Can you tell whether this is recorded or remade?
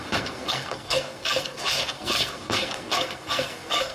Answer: remade